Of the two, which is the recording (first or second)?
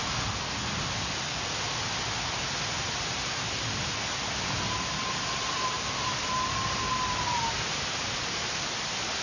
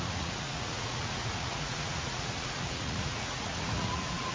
first